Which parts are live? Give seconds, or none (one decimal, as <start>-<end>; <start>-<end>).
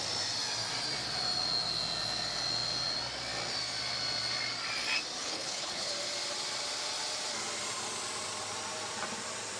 0.0-5.2; 5.9-9.6